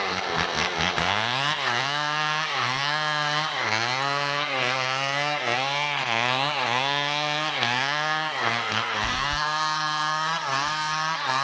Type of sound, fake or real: fake